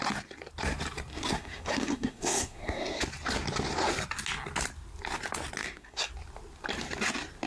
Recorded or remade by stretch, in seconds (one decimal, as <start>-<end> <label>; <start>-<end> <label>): 0.0-1.1 recorded; 1.1-3.0 remade; 3.0-5.6 recorded; 5.6-6.1 remade; 6.1-7.5 recorded